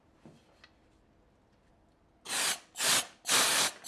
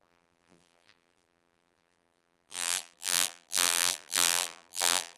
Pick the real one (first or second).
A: first